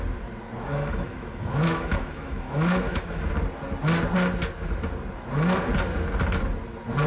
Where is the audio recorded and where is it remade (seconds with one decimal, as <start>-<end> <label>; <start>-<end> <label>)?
0.0-0.7 recorded; 0.7-3.3 remade; 3.3-7.1 recorded